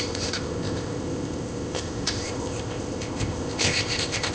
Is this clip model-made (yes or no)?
yes